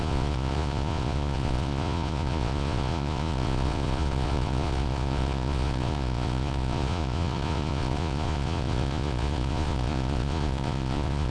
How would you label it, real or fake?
fake